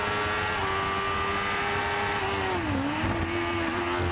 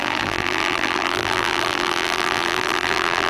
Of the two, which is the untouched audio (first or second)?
first